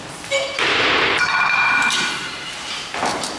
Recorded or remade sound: remade